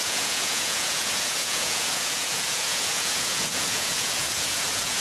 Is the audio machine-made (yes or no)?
yes